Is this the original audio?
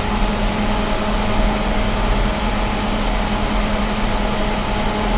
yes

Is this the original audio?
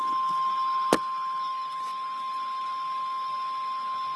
yes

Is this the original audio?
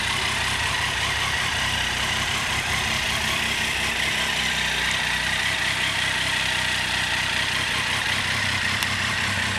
no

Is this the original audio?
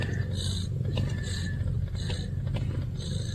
yes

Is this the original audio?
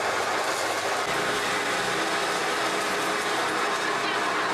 yes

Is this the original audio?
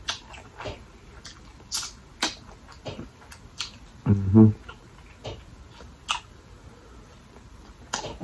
yes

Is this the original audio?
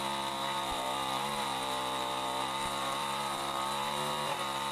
no